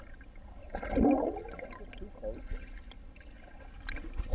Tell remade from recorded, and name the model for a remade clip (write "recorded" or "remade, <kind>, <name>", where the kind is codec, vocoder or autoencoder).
recorded